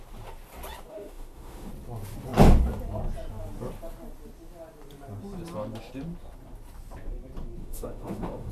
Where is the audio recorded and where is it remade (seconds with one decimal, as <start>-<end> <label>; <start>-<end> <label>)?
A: 0.0-0.9 recorded; 0.9-1.7 remade; 1.7-7.6 recorded; 7.6-8.5 remade